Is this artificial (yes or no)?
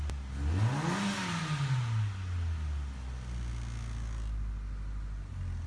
no